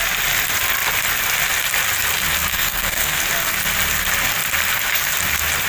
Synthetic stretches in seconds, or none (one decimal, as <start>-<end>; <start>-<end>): 2.5-3.2